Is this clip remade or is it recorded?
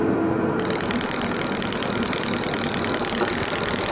recorded